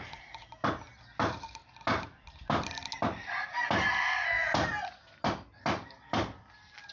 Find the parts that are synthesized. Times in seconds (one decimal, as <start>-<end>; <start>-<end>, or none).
none

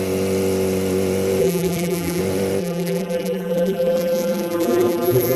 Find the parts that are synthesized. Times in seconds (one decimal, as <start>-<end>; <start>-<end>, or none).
1.4-2.2; 2.6-5.4

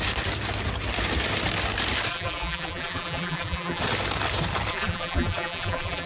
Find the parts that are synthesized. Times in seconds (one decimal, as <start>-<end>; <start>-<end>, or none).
2.1-3.8; 4.7-6.1

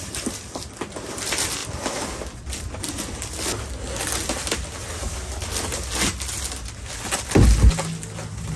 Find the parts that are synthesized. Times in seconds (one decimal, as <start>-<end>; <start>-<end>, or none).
none

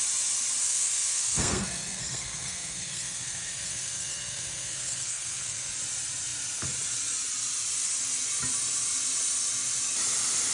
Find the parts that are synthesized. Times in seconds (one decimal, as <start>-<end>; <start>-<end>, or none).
0.6-5.7